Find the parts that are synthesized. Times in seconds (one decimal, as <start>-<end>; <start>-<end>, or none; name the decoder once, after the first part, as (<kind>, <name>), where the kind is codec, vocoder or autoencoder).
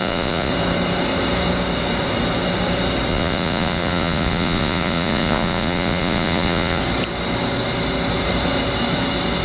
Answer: 0.0-0.5 (vocoder, Vocos); 3.1-6.8